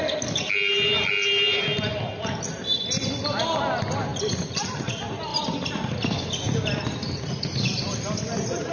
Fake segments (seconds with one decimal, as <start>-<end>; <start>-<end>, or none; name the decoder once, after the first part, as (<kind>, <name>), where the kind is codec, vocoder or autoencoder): none